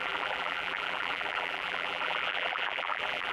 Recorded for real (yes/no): no